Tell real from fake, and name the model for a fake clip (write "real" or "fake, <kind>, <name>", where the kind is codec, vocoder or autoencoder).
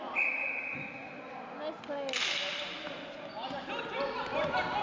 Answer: real